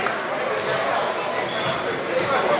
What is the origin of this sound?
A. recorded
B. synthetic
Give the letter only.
A